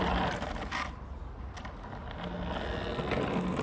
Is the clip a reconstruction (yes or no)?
no